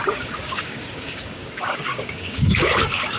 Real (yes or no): no